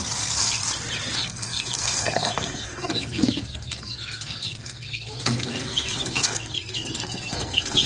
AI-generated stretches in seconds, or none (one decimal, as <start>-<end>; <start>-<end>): 0.0-0.6; 1.1-7.9

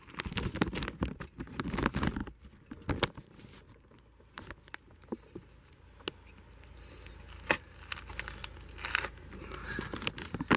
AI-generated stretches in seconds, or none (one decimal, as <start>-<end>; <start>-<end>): none

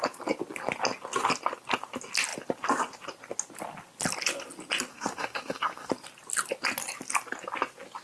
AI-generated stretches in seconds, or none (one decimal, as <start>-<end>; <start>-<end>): 4.9-5.9

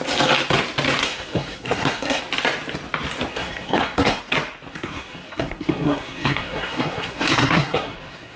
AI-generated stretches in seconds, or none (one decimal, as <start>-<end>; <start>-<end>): 1.0-2.2; 3.3-4.2; 4.7-8.4

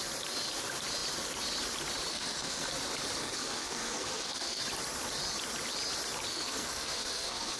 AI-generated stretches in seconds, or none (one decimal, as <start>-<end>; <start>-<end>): 2.1-2.7; 3.2-4.6; 6.3-7.6

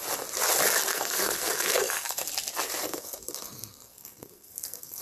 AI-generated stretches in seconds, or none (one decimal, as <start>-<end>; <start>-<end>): 0.9-2.3; 2.8-5.0

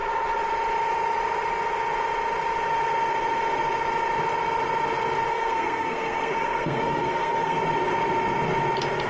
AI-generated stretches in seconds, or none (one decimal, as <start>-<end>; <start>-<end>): 5.3-7.6

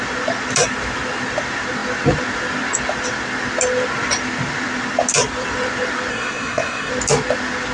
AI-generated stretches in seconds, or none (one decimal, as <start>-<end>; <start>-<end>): 6.1-6.9